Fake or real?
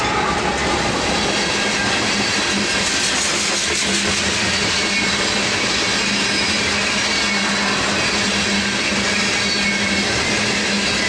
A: real